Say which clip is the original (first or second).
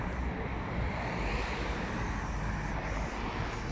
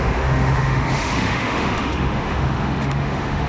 first